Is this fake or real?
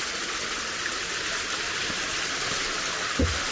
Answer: real